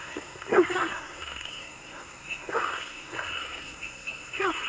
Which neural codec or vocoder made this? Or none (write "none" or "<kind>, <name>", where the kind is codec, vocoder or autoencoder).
codec, SNAC